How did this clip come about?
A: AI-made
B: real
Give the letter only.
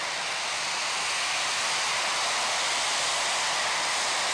B